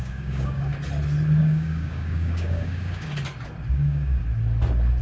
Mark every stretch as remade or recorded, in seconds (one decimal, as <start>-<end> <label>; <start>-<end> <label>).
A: 0.0-0.7 remade; 0.7-1.4 recorded; 1.4-3.1 remade; 3.1-3.7 recorded; 3.7-4.2 remade; 4.2-5.0 recorded